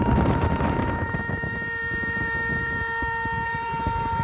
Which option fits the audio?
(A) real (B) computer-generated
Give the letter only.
B